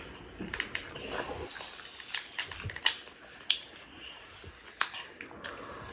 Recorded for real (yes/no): yes